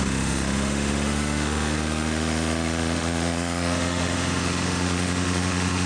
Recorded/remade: remade